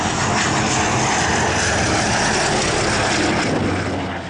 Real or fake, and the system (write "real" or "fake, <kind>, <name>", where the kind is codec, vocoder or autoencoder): real